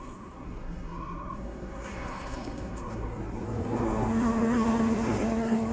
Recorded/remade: remade